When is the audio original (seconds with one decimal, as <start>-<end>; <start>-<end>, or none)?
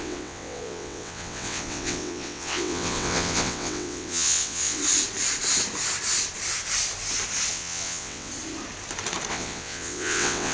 4.8-7.5; 8.3-9.3